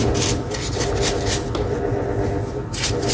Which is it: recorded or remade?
recorded